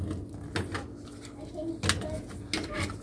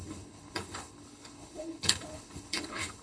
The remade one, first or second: second